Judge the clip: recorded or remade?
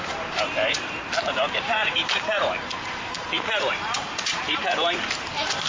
remade